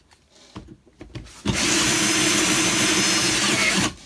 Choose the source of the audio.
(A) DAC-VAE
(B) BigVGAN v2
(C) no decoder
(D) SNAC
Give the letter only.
C